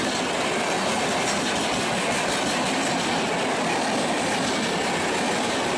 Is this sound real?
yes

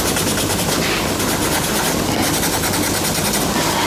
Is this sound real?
yes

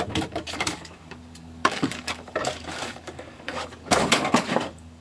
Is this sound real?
no